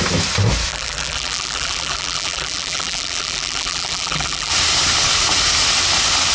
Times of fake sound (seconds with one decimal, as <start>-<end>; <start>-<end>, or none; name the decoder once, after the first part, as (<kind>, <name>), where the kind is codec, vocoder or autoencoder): 0.7-4.5 (vocoder, BigVGAN v2)